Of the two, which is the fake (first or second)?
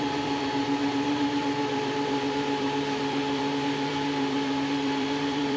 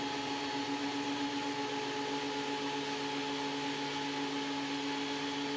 first